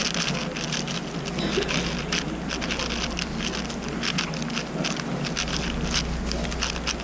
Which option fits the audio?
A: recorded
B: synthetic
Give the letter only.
A